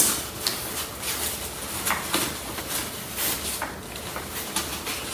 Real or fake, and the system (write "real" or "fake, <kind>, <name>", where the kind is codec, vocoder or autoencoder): real